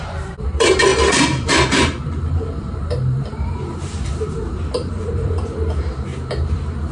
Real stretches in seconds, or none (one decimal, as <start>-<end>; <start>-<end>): 6.1-6.9